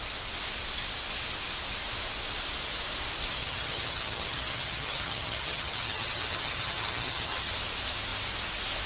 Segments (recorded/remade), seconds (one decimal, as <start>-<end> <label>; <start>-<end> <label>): 0.0-3.4 recorded; 3.4-7.5 remade; 7.5-8.9 recorded